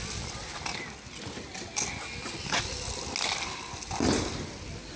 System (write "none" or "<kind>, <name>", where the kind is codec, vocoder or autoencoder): none